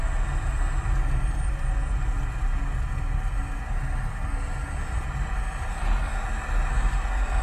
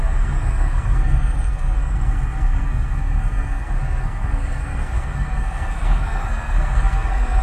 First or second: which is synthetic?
second